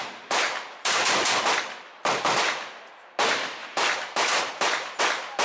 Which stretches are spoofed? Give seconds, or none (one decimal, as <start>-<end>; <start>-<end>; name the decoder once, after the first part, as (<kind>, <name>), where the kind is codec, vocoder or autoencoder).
0.0-1.0 (vocoder, BigVGAN v2); 3.6-5.0